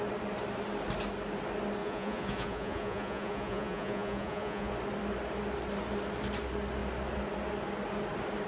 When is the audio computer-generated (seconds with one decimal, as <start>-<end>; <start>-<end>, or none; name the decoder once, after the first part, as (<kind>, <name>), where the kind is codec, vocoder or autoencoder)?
1.8-4.7 (vocoder, Vocos)

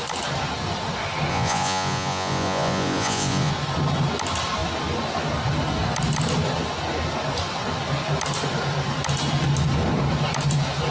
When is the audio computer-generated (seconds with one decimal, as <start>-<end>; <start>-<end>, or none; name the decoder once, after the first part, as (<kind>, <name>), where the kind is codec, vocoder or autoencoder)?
1.3-3.5 (vocoder, Vocos)

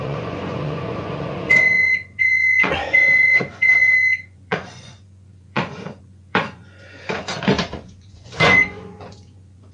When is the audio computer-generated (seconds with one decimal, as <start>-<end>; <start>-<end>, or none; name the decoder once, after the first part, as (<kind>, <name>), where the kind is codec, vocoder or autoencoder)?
0.0-9.7 (vocoder, Vocos)

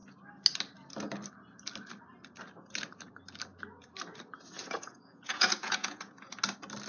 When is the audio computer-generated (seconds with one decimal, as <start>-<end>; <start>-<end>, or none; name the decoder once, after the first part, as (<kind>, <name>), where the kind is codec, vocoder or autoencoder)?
4.6-6.3 (vocoder, Vocos)